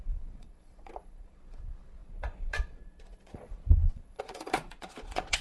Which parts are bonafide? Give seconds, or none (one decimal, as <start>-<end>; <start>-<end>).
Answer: none